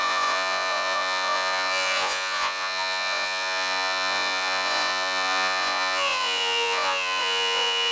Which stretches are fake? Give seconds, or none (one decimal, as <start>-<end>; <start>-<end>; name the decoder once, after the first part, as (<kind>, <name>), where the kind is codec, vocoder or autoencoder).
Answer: 0.0-7.9 (vocoder, Vocos)